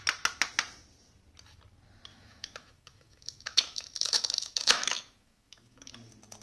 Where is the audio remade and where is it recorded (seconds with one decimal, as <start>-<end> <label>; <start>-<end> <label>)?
0.0-2.1 recorded; 2.1-5.9 remade; 5.9-6.4 recorded